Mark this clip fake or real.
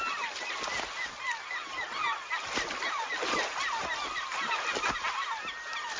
real